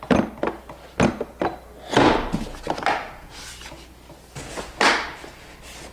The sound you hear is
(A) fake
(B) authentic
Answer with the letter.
B